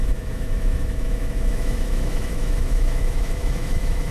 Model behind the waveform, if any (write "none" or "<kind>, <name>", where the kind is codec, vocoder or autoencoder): autoencoder, DAC-VAE